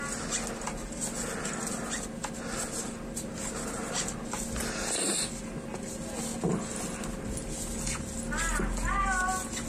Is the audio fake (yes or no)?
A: no